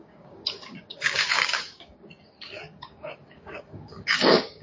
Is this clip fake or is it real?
fake